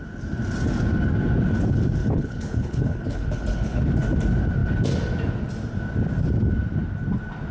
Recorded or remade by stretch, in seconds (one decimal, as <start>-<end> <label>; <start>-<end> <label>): 0.0-2.0 recorded; 2.0-3.8 remade; 3.8-7.5 recorded